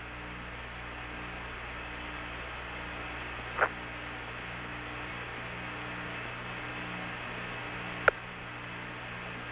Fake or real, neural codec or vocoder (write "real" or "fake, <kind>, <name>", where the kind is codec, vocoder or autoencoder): real